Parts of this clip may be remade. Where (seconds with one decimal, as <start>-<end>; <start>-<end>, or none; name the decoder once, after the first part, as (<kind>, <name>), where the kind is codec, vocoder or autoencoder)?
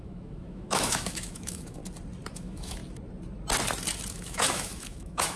0.0-1.8 (autoencoder, DAC-VAE); 2.3-2.8; 4.1-5.4